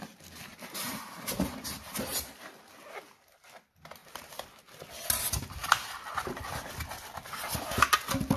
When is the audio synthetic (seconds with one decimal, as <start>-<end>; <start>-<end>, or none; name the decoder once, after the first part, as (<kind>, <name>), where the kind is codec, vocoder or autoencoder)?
0.5-2.5 (vocoder, BigVGAN v2); 4.0-4.6